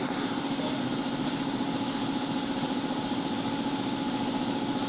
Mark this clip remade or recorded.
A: recorded